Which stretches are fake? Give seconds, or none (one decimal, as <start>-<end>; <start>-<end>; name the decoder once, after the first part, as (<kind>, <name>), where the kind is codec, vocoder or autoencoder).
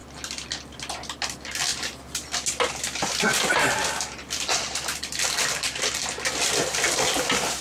none